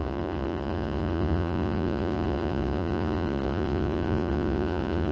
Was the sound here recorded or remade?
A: remade